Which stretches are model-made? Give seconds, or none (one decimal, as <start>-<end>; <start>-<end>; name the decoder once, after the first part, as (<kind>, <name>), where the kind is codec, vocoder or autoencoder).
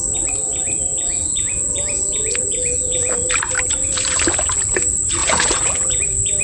0.9-3.3 (vocoder, Vocos); 5.2-6.0